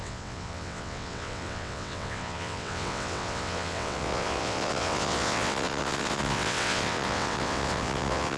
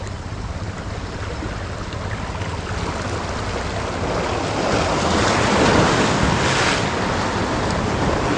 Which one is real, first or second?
second